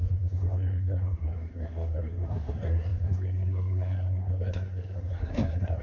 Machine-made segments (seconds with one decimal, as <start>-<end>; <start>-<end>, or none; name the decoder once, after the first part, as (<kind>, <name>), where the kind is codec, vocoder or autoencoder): 0.0-5.8 (codec, SNAC)